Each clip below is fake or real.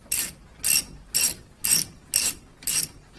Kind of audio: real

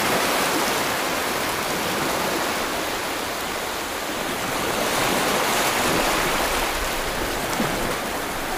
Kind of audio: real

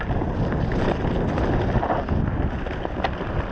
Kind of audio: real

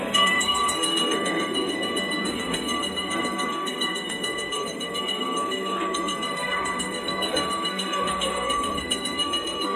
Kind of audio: fake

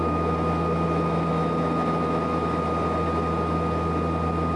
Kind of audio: real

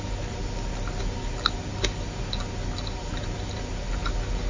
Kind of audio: real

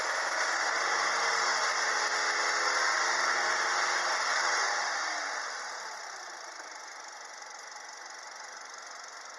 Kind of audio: real